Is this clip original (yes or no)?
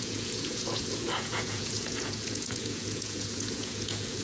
no